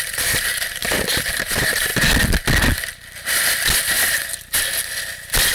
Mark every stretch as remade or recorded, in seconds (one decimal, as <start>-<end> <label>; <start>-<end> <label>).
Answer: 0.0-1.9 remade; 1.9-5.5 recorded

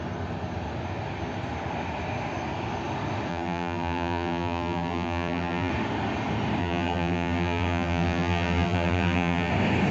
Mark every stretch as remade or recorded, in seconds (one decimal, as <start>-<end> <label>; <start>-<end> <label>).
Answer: 0.0-3.3 recorded; 3.3-5.7 remade; 5.7-6.6 recorded; 6.6-9.5 remade; 9.5-9.9 recorded

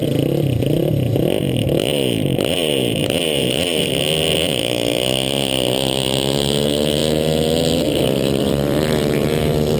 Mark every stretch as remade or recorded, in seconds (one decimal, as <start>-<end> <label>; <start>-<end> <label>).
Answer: 0.0-1.4 recorded; 1.4-9.8 remade

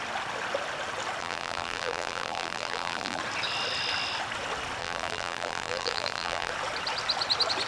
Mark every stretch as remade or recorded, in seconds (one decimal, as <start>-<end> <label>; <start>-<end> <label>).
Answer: 0.0-1.2 recorded; 1.2-3.2 remade; 3.2-4.8 recorded; 4.8-6.5 remade; 6.5-7.7 recorded

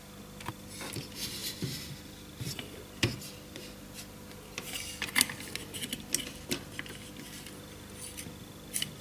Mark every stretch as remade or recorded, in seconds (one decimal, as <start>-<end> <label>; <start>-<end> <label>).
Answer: 0.0-9.0 recorded